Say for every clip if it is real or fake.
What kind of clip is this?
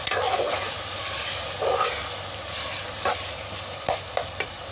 real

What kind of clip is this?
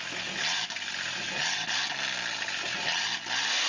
real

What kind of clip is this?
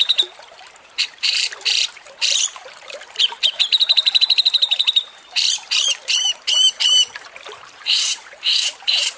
fake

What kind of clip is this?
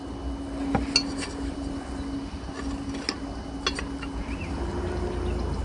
real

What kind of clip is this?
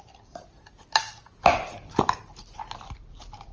fake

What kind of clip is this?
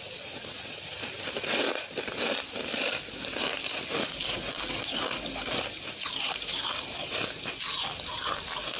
fake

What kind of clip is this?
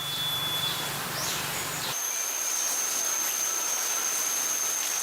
real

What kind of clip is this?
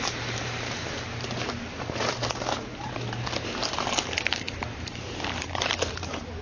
fake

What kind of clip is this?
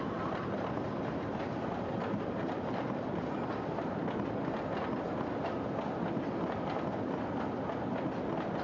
real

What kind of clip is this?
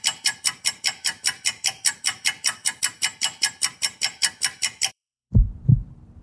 fake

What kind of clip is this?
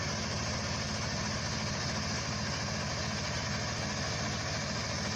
real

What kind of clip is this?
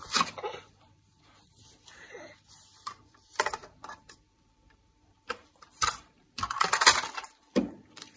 fake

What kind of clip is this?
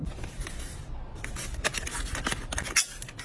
real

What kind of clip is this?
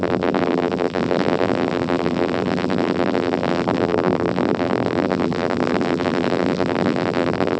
fake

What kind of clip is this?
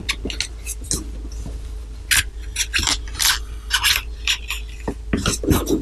real